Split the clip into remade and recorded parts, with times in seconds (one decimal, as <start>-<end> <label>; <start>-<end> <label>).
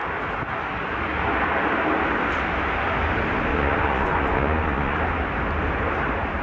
0.0-3.5 recorded; 3.5-5.0 remade; 5.0-6.4 recorded